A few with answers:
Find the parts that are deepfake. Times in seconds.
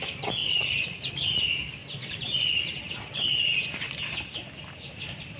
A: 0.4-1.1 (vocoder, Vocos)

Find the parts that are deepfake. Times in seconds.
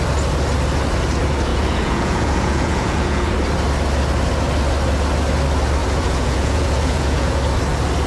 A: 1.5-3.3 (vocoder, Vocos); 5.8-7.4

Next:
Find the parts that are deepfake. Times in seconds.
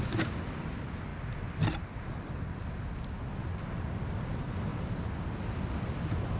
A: none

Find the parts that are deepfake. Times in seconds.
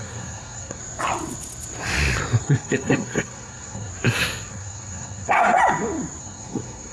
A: 0.0-0.8 (codec, SNAC); 2.4-3.9; 4.5-5.6; 6.2-6.9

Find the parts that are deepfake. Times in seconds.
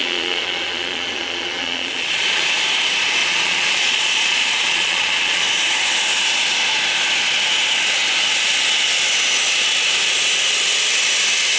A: 0.0-2.4 (vocoder, Vocos); 3.2-5.4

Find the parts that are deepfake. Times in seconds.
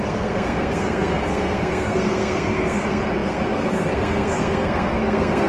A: 0.0-5.5 (codec, SNAC)